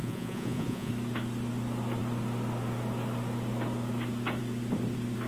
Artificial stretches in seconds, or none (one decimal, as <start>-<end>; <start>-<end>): 0.0-0.9